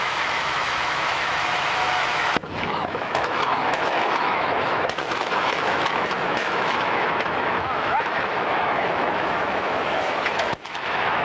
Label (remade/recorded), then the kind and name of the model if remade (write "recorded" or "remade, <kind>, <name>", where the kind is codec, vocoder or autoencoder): remade, autoencoder, DAC-VAE